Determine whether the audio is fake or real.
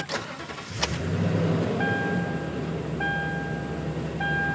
real